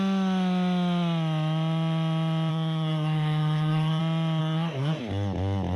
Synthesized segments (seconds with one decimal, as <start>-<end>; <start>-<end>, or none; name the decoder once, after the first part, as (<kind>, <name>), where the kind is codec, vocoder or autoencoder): 2.5-4.0 (codec, SNAC); 4.4-5.0